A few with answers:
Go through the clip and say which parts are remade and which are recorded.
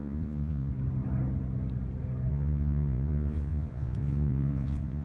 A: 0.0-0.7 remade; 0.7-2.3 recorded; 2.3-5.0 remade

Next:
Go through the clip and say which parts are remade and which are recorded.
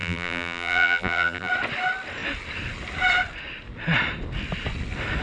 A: 0.0-1.5 remade; 1.5-5.2 recorded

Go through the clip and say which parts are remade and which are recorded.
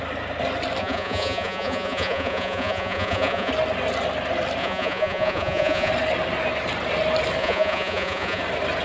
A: 0.0-0.8 recorded; 0.8-3.5 remade; 3.5-4.6 recorded; 4.6-5.9 remade; 5.9-7.4 recorded; 7.4-8.4 remade; 8.4-8.8 recorded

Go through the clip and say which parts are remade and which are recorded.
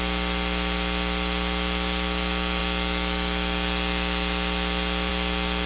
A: 0.0-5.7 recorded